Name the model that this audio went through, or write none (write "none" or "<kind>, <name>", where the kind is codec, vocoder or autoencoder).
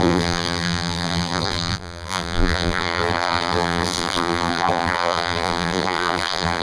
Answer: vocoder, BigVGAN v2